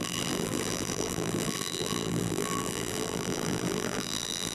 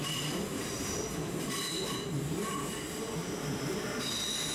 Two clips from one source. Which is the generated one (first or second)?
first